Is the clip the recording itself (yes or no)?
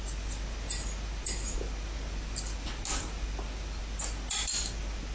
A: yes